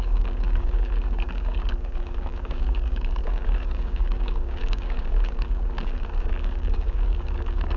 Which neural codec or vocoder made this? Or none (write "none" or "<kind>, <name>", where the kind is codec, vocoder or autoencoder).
codec, DAC